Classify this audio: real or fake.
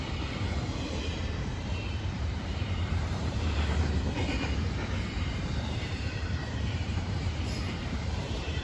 fake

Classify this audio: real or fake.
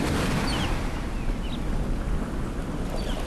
real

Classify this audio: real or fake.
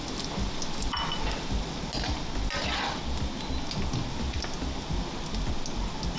real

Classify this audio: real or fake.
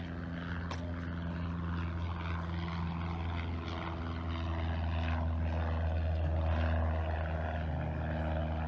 real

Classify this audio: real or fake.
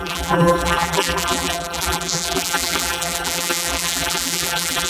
fake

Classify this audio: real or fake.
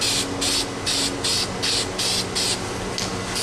real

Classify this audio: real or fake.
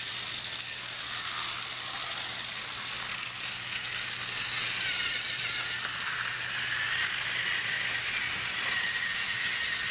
real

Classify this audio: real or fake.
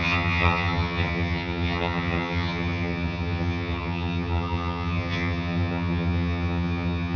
fake